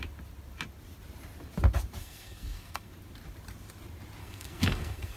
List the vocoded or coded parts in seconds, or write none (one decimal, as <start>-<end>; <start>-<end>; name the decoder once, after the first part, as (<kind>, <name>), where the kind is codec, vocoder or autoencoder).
2.0-2.9 (codec, SNAC); 4.2-5.2